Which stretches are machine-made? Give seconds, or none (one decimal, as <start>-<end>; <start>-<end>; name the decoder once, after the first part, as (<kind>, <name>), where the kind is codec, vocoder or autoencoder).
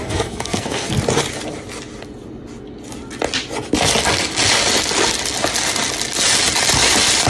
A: 0.0-1.0 (codec, SNAC)